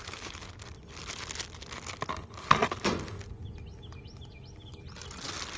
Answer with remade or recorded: recorded